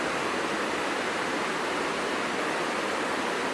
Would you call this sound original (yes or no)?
yes